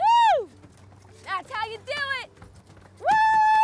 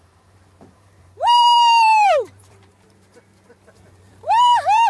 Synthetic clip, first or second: second